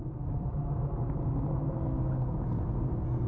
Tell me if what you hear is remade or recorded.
recorded